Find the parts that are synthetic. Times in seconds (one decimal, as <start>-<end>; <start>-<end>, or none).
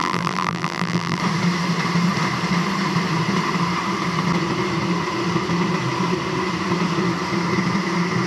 0.0-1.2